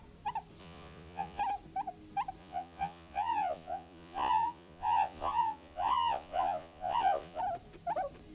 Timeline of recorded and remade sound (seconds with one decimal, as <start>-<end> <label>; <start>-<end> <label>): 0.0-0.6 recorded; 0.6-1.4 remade; 1.4-2.4 recorded; 2.4-7.4 remade; 7.4-8.3 recorded